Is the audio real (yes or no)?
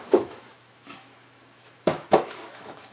no